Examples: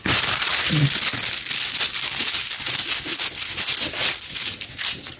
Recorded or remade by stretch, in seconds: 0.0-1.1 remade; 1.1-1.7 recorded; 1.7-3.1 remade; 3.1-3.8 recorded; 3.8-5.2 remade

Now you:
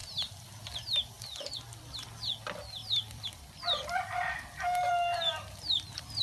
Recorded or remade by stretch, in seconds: 0.0-2.8 recorded; 2.8-4.9 remade; 4.9-6.2 recorded

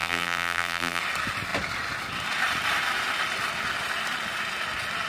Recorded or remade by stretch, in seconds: 0.0-1.0 remade; 1.0-5.1 recorded

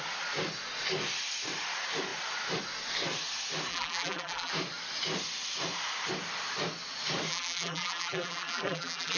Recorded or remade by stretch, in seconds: 0.0-3.7 recorded; 3.7-4.5 remade; 4.5-7.3 recorded; 7.3-9.2 remade

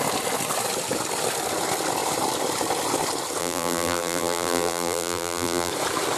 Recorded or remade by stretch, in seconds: 0.0-3.4 recorded; 3.4-5.7 remade; 5.7-6.2 recorded